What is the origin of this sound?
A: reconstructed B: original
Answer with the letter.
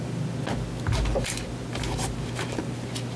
B